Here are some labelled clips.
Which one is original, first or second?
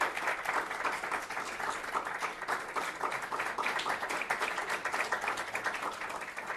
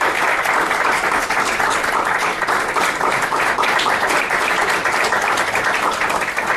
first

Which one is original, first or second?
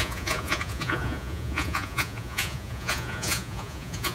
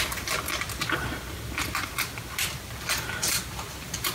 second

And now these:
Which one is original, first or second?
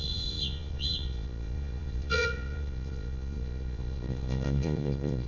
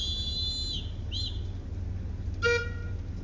second